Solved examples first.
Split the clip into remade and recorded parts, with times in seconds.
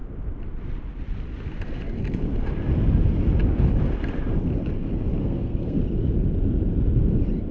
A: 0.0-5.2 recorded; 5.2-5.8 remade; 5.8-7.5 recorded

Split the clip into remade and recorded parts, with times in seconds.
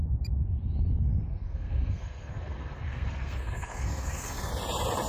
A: 0.0-1.4 recorded; 1.4-4.5 remade; 4.5-5.1 recorded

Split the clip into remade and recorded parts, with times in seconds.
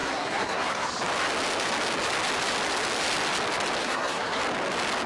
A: 0.0-0.9 remade; 0.9-3.8 recorded; 3.8-4.4 remade; 4.4-5.1 recorded